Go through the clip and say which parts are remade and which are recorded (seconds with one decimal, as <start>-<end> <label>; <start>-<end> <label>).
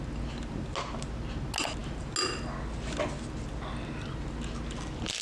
0.0-5.2 recorded